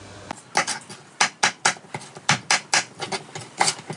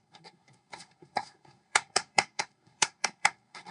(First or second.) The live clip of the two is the first